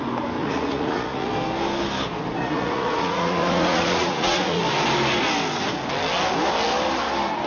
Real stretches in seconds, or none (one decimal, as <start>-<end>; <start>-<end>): 0.0-0.4; 1.3-2.4; 4.6-7.5